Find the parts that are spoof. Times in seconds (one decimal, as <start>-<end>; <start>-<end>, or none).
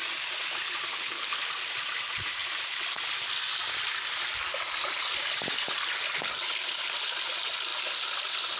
0.9-1.4